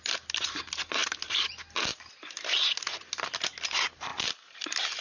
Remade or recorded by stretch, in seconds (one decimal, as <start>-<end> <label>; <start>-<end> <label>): 0.0-4.1 recorded; 4.1-4.6 remade; 4.6-5.0 recorded